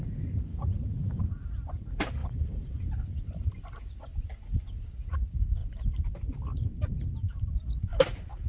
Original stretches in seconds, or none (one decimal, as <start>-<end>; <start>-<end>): 0.0-0.5; 1.2-2.2; 2.9-8.5